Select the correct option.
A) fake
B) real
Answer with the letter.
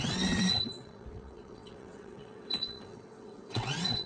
A